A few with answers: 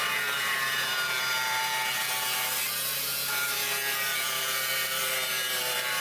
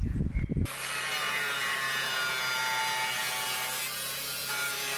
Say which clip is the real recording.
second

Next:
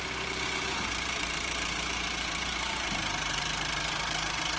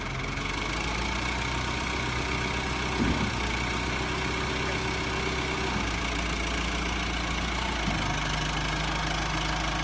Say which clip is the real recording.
second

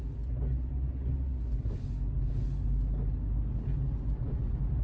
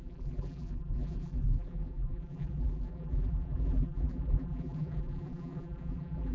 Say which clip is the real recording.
first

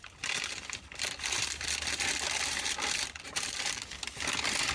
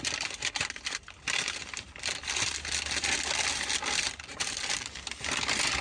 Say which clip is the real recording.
second